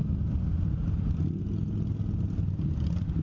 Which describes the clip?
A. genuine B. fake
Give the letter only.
A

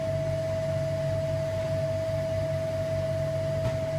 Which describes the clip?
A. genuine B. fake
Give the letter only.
A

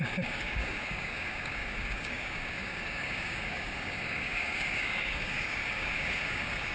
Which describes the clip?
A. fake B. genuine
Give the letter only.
A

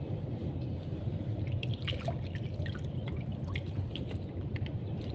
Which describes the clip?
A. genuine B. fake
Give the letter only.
A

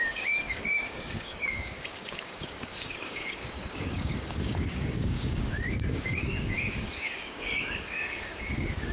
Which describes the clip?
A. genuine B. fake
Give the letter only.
B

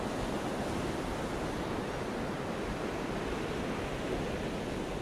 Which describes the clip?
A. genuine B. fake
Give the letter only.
A